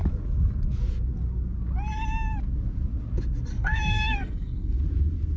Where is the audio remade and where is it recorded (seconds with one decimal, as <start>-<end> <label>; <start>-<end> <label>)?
0.0-3.5 recorded; 3.5-4.8 remade; 4.8-5.4 recorded